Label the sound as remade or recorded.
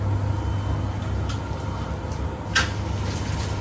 recorded